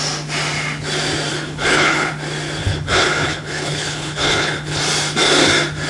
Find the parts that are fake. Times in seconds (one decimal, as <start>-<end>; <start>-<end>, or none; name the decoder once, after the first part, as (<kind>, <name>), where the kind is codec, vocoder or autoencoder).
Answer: 1.3-2.1 (codec, HILCodec); 2.6-4.8